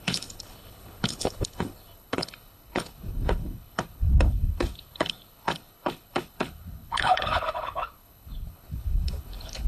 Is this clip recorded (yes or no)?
no